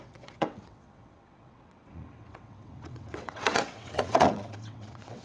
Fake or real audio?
fake